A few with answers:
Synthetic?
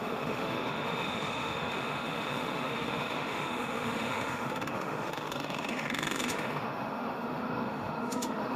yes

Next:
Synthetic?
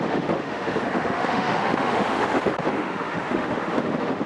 yes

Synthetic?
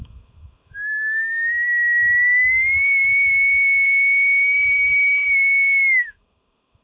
yes